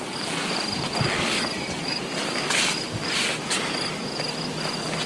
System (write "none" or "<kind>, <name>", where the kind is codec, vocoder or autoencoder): none